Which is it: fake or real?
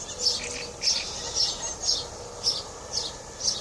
real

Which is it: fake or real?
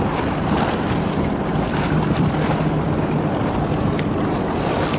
real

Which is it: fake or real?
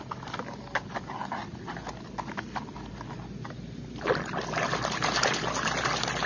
real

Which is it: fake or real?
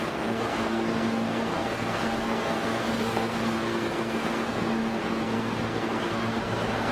fake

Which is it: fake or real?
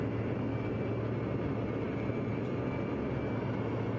real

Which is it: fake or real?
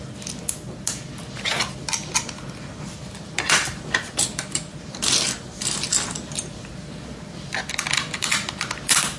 real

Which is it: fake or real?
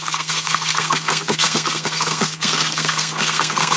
fake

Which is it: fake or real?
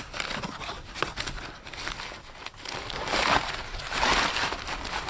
real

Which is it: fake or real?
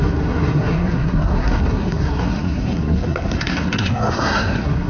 fake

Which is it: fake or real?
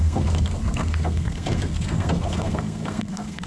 fake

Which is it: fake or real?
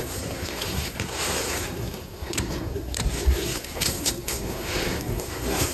fake